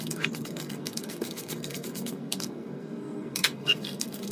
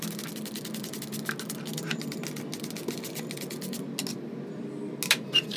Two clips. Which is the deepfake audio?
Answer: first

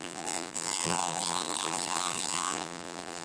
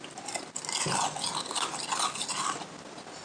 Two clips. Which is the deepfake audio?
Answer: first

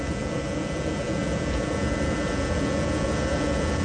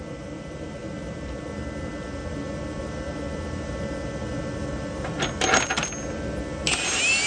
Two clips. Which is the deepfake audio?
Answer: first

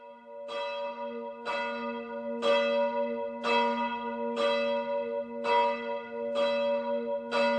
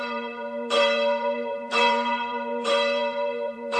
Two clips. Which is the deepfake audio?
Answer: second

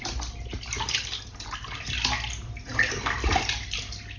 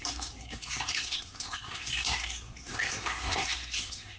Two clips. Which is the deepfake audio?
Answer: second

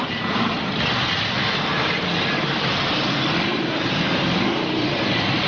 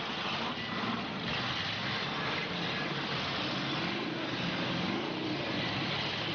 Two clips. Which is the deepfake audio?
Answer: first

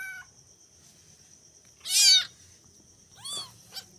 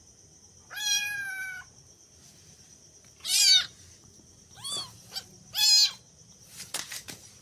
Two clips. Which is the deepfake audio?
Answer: second